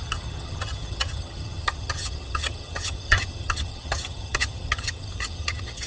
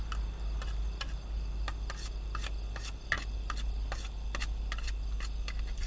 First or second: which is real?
second